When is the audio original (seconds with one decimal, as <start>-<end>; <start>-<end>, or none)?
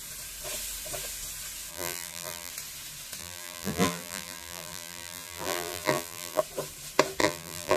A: 0.0-1.7; 2.5-3.2; 6.4-7.2